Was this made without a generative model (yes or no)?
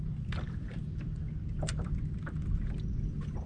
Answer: yes